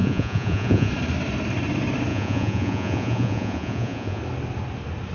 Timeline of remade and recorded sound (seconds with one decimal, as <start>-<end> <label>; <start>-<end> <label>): 0.0-0.9 remade; 0.9-2.1 recorded; 2.1-4.2 remade; 4.2-5.1 recorded

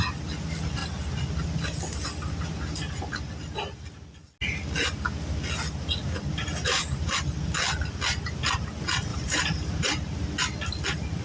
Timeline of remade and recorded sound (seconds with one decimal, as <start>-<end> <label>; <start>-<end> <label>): 0.0-6.3 recorded; 6.3-7.1 remade; 7.1-9.1 recorded; 9.1-9.9 remade; 9.9-11.2 recorded

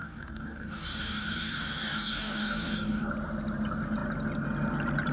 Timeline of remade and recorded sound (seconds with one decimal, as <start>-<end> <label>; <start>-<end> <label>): 0.0-3.1 remade; 3.1-5.1 recorded

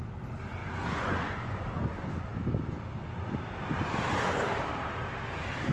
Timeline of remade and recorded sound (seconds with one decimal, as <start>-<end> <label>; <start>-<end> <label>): 0.0-0.6 recorded; 0.6-1.6 remade; 1.6-5.7 recorded